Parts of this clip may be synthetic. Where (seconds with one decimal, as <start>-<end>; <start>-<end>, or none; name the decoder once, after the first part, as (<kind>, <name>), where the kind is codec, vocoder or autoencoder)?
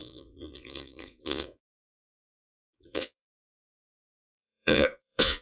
0.0-2.3 (vocoder, Vocos); 2.7-5.4